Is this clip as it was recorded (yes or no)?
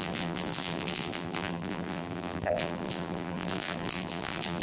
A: no